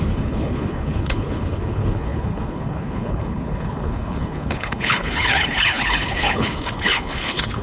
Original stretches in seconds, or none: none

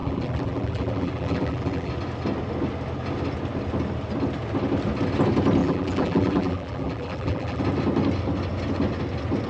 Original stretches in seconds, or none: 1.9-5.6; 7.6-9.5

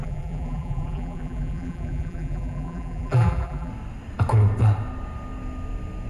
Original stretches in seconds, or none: 3.7-6.1

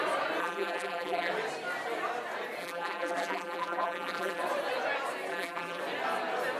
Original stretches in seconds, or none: 0.0-0.4; 1.3-2.6; 4.4-5.3; 5.8-6.6